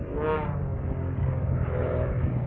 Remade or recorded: remade